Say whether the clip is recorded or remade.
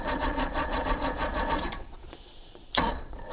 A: remade